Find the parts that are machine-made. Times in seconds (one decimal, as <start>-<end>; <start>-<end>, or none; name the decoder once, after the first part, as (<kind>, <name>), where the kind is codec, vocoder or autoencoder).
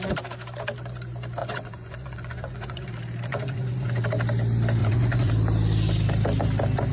1.4-2.9 (vocoder, Vocos); 3.3-4.0; 4.8-5.3